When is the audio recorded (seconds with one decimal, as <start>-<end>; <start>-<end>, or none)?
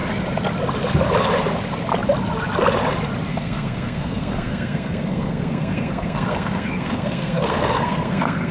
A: 0.0-3.3